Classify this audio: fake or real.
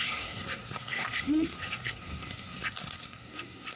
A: fake